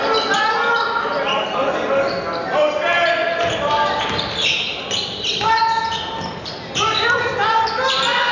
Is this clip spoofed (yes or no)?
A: no